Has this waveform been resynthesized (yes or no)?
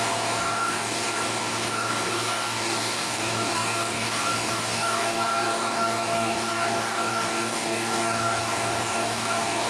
yes